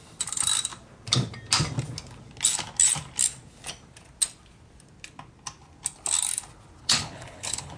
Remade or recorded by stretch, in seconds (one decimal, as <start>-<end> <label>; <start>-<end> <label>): 0.0-6.8 recorded; 6.8-7.8 remade

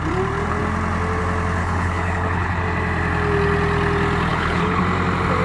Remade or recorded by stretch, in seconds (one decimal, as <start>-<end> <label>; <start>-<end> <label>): 0.0-1.6 recorded; 1.6-2.6 remade; 2.6-4.3 recorded; 4.3-4.8 remade; 4.8-5.4 recorded

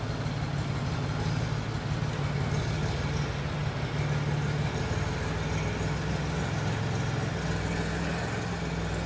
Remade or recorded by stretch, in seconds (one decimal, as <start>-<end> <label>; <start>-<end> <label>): 0.0-9.1 recorded

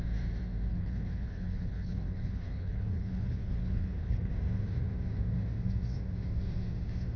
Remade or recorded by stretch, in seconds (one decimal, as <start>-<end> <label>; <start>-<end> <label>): 0.0-0.7 recorded; 0.7-4.3 remade; 4.3-7.2 recorded

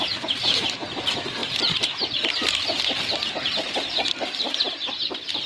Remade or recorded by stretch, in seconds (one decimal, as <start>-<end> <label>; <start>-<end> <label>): 0.0-5.5 recorded

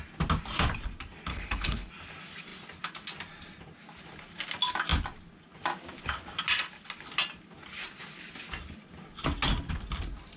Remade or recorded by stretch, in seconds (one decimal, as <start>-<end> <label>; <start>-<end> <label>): 0.0-1.3 recorded; 1.3-1.9 remade; 1.9-10.4 recorded

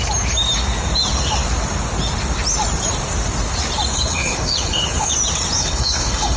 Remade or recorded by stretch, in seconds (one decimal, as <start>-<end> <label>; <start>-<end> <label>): 0.0-3.9 recorded; 3.9-5.1 remade; 5.1-5.6 recorded; 5.6-6.4 remade

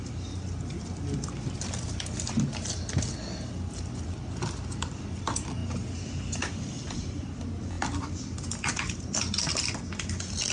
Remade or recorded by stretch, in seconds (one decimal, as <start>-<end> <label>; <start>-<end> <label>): 0.0-10.5 recorded